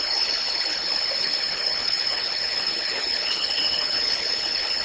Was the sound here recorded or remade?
remade